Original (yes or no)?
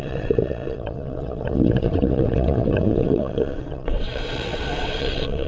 no